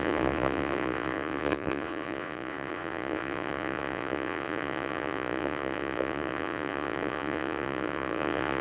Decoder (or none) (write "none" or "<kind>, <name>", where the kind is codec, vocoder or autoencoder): vocoder, Vocos